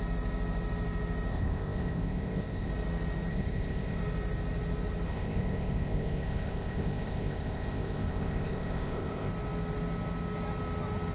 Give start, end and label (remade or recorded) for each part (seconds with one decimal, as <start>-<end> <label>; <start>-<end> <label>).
0.0-1.3 recorded; 1.3-2.7 remade; 2.7-3.3 recorded; 3.3-4.0 remade; 4.0-5.1 recorded; 5.1-9.3 remade; 9.3-11.1 recorded